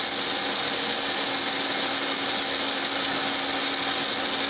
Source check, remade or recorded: recorded